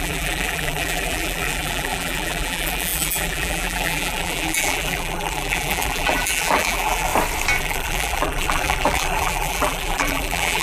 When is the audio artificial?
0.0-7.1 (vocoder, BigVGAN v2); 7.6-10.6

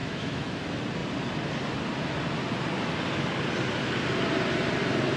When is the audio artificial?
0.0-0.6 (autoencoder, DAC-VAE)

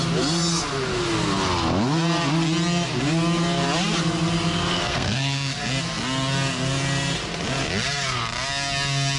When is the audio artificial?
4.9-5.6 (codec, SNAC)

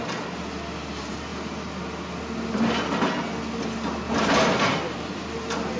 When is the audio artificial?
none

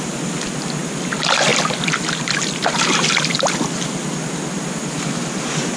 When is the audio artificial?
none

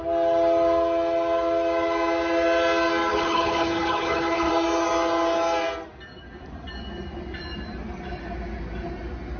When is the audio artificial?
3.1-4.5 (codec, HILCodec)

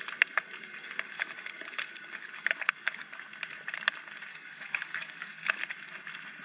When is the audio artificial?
0.8-3.1 (codec, DAC); 4.3-5.6